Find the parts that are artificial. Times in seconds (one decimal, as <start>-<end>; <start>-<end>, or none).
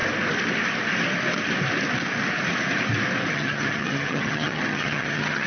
3.3-5.5